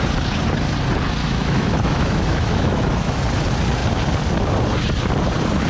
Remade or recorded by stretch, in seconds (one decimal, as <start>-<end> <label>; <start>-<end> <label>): 0.0-1.2 recorded; 1.2-3.2 remade; 3.2-5.7 recorded